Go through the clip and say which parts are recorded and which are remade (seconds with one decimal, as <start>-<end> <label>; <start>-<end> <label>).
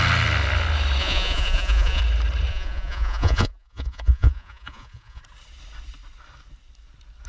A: 0.0-1.0 recorded; 1.0-2.0 remade; 2.0-2.5 recorded; 2.5-5.2 remade; 5.2-7.3 recorded